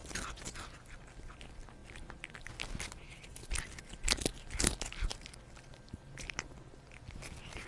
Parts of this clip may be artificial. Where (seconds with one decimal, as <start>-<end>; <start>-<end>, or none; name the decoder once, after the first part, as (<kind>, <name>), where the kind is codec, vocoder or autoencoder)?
none